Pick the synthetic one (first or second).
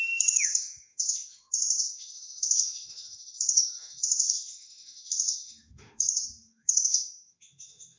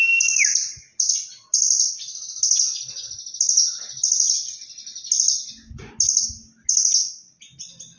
first